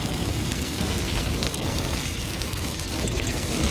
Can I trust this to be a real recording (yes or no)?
no